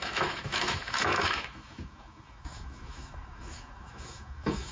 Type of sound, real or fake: fake